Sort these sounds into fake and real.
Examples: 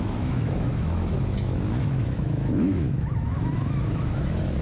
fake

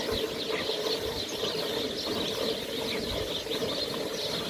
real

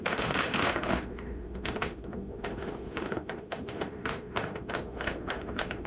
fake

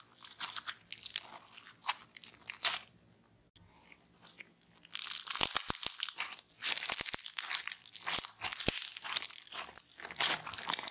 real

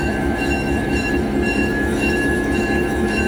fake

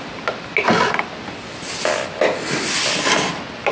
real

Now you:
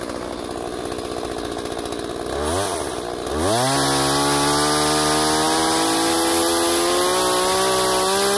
real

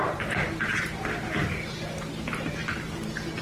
real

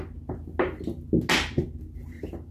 real